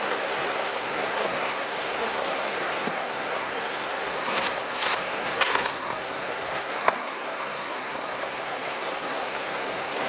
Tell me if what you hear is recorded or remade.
remade